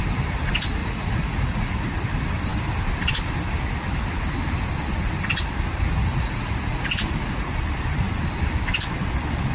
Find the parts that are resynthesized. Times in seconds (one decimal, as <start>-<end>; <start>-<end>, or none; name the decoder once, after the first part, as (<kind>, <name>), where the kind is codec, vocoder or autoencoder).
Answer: 0.8-1.8 (vocoder, Vocos); 6.0-7.5

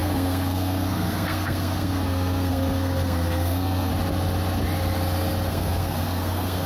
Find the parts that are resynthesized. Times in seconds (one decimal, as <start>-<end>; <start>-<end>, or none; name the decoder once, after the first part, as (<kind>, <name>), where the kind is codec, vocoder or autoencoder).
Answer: 0.0-3.9 (codec, SNAC); 5.5-6.7

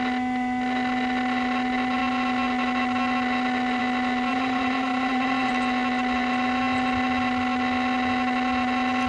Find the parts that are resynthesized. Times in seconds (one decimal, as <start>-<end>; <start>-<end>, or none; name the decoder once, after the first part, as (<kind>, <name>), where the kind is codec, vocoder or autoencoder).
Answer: 4.3-5.5 (vocoder, Vocos)

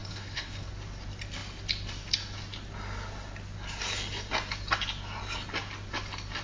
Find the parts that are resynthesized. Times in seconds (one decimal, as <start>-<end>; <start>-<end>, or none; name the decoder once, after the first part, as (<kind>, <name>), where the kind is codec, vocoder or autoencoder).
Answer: 0.0-0.7 (codec, HILCodec)

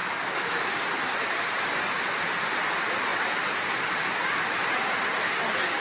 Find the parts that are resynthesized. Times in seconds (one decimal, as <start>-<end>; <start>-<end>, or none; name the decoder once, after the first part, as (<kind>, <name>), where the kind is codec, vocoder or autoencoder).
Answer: none